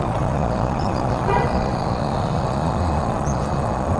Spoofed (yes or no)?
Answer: yes